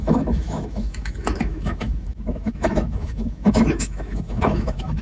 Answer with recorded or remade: remade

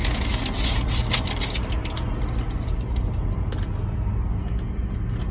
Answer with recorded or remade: recorded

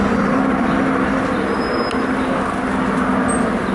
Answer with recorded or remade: recorded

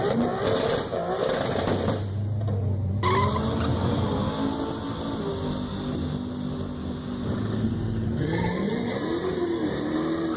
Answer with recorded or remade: recorded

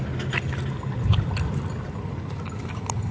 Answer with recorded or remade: recorded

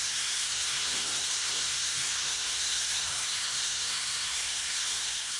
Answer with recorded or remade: remade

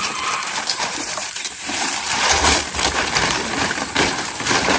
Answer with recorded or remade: remade